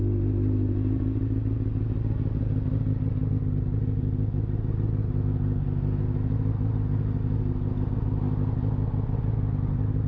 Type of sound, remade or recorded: recorded